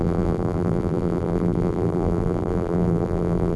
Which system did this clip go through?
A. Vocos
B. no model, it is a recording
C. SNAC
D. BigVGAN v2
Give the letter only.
D